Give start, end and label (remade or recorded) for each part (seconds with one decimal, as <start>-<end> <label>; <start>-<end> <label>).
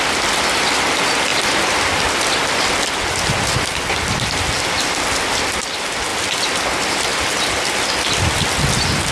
0.0-1.3 recorded; 1.3-2.4 remade; 2.4-9.1 recorded